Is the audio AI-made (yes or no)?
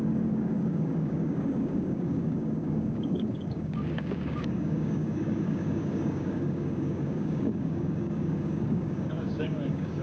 yes